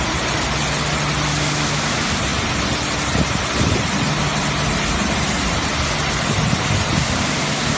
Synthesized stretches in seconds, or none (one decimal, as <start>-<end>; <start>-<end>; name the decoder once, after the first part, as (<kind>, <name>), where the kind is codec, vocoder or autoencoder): none

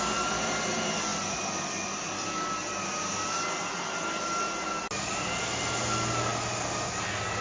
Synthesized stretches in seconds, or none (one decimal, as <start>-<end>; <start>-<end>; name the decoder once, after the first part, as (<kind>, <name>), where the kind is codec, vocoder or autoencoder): none